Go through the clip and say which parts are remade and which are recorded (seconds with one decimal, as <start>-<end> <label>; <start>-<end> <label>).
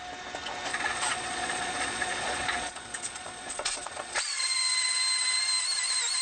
0.0-0.7 recorded; 0.7-4.4 remade; 4.4-6.2 recorded